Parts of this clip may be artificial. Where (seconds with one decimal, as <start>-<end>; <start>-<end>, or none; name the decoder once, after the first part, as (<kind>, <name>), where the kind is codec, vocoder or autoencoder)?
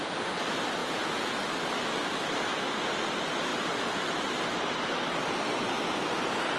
0.8-1.4 (vocoder, Vocos)